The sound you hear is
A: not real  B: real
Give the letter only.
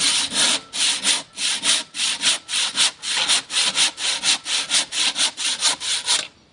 B